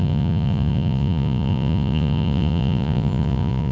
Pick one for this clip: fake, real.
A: fake